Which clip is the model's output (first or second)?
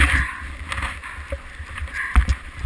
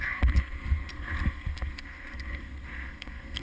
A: second